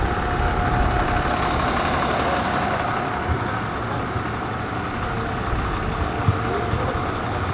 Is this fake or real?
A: real